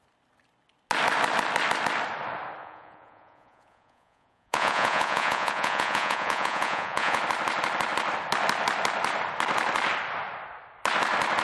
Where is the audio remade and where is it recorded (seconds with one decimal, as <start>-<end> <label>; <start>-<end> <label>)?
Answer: 0.0-2.6 recorded; 2.6-7.2 remade; 7.2-11.4 recorded